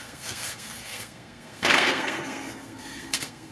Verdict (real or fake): fake